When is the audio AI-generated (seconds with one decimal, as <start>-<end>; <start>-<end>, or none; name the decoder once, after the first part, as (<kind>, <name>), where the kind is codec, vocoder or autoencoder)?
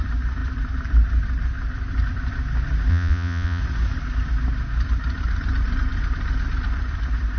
2.9-3.6 (vocoder, Vocos)